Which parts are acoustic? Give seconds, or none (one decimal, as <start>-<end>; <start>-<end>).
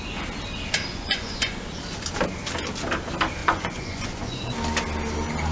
0.0-0.9; 1.6-3.4; 4.4-5.5